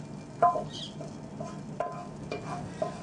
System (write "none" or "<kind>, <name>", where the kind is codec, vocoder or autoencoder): none